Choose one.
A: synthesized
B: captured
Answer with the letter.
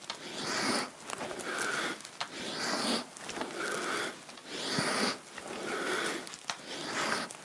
B